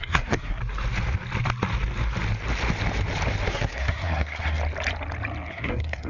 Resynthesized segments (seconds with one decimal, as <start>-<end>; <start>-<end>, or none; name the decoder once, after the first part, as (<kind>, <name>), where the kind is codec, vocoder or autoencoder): 0.0-0.6 (codec, SNAC); 3.5-4.6; 5.5-6.1